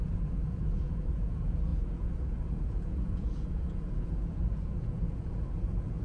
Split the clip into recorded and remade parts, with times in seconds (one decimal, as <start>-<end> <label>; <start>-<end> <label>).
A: 0.0-6.0 remade